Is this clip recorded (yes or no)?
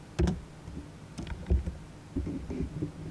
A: yes